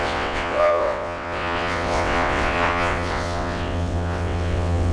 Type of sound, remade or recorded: remade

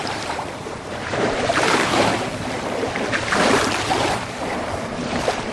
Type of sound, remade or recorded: remade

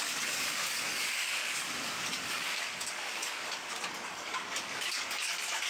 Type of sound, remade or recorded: remade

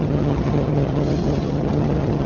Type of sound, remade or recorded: remade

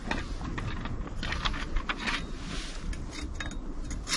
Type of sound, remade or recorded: recorded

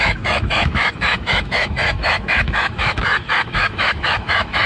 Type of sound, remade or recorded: remade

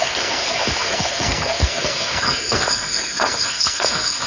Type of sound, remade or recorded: remade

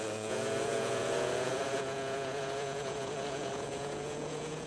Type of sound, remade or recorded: remade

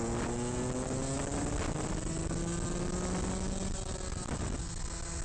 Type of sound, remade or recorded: recorded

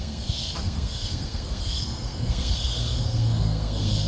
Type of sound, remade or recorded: remade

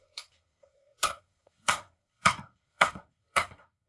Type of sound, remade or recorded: remade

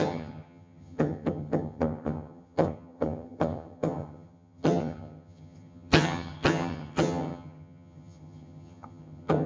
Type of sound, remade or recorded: remade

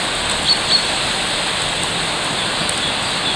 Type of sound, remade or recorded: recorded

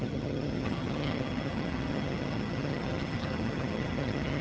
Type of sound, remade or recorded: remade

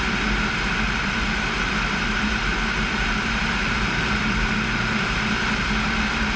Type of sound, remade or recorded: remade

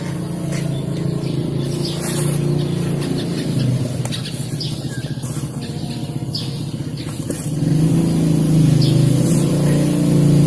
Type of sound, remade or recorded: recorded